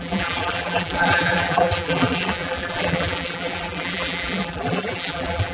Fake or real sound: fake